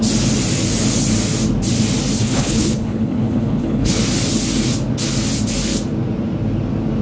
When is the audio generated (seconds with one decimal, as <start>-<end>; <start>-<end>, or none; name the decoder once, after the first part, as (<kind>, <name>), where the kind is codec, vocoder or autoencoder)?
2.2-3.9 (codec, HILCodec)